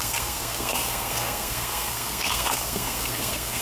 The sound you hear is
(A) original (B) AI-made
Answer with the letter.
B